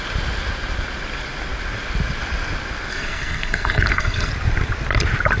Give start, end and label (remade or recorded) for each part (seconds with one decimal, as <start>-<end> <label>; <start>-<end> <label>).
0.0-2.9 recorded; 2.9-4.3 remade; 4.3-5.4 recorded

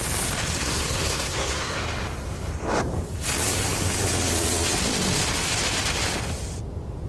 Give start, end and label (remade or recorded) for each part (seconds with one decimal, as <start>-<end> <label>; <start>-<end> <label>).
0.0-0.6 recorded; 0.6-1.8 remade; 1.8-7.1 recorded

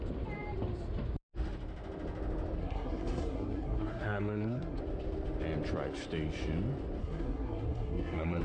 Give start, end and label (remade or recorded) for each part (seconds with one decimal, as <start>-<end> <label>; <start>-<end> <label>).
0.0-2.6 recorded; 2.6-4.8 remade; 4.8-7.0 recorded; 7.0-8.4 remade

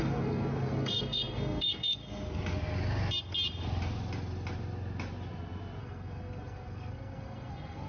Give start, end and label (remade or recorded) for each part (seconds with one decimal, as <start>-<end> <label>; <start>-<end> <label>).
0.0-2.0 remade; 2.0-5.8 recorded; 5.8-7.9 remade

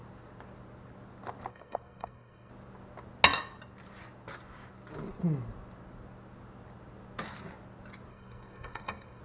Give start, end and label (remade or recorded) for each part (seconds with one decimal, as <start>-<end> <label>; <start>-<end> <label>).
0.0-1.5 recorded; 1.5-2.5 remade; 2.5-8.1 recorded; 8.1-9.2 remade

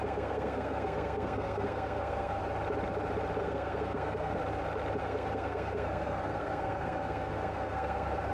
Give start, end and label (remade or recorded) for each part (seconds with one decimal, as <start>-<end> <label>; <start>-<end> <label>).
0.0-2.4 remade; 2.4-3.4 recorded; 3.4-4.4 remade; 4.4-5.0 recorded; 5.0-8.3 remade

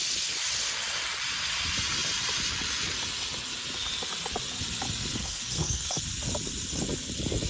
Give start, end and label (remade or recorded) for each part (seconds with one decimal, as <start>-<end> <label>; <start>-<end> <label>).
0.0-5.1 recorded; 5.1-6.0 remade; 6.0-7.5 recorded

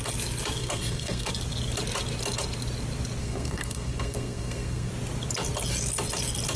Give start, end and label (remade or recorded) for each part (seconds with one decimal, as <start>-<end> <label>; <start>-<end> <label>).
0.0-0.6 recorded; 0.6-1.3 remade; 1.3-3.2 recorded; 3.2-4.9 remade; 4.9-6.6 recorded